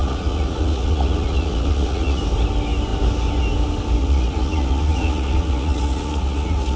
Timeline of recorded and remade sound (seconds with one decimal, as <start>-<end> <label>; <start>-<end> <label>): 0.0-2.2 remade; 2.2-4.0 recorded; 4.0-6.8 remade